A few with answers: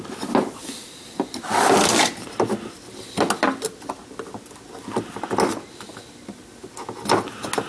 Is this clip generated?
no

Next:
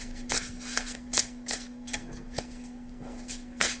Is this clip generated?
yes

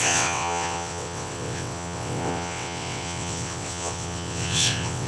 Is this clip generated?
yes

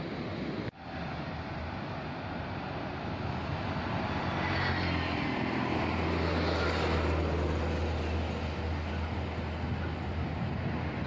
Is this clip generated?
no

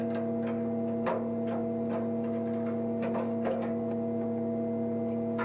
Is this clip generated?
no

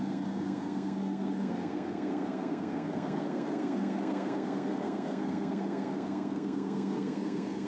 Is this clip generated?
yes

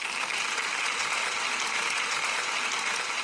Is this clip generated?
no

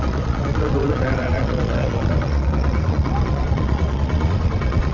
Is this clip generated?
yes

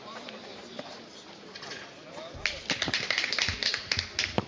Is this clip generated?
no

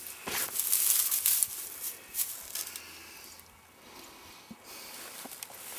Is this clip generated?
no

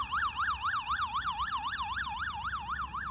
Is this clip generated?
yes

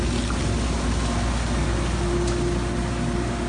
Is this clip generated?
no